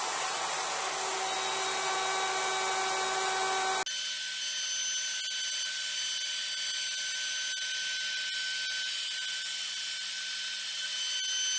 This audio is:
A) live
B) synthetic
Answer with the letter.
A